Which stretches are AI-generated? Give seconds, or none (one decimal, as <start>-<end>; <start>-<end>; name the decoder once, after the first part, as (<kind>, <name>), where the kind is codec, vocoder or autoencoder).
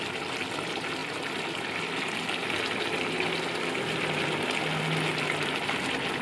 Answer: none